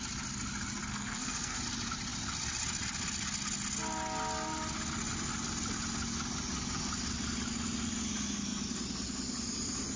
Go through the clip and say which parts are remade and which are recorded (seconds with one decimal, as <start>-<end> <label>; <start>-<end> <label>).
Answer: 0.0-0.9 recorded; 0.9-1.6 remade; 1.6-10.0 recorded